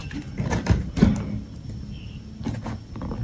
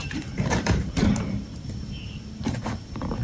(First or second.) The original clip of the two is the first